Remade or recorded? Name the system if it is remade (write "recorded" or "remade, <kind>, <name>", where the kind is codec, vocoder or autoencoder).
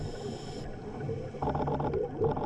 recorded